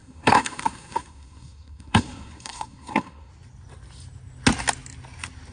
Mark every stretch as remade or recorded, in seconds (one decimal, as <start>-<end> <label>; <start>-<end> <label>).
0.0-3.3 remade; 3.3-5.5 recorded